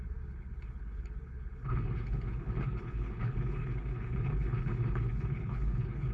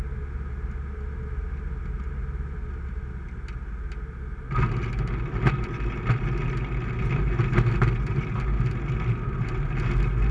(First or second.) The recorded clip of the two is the second